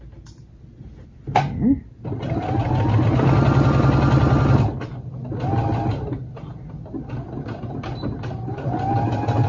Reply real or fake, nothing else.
real